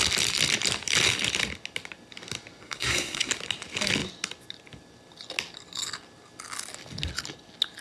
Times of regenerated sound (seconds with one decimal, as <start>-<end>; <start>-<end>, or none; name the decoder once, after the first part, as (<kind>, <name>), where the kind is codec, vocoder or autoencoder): 2.6-3.3 (codec, SNAC)